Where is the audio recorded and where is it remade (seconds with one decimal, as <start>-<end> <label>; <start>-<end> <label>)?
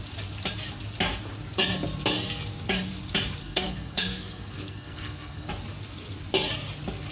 0.0-3.4 recorded; 3.4-5.5 remade; 5.5-7.1 recorded